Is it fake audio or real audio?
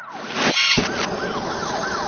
real